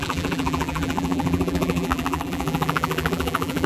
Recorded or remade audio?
remade